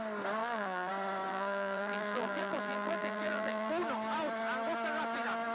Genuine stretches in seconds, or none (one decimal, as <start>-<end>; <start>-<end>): 0.0-0.4; 0.9-1.3; 3.7-5.5